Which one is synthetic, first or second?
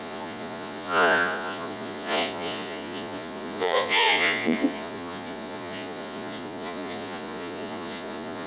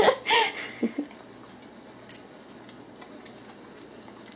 first